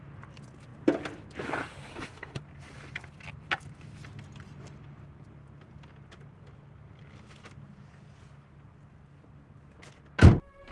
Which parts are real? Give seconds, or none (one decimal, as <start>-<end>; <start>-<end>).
0.0-1.9; 2.4-10.7